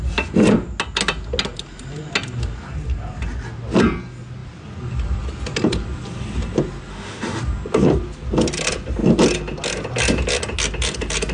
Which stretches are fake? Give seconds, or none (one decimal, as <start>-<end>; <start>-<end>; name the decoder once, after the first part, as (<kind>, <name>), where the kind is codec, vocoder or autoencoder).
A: 6.9-7.4 (autoencoder, DAC-VAE)